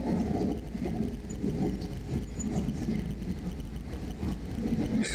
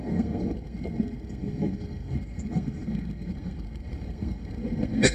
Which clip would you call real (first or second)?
first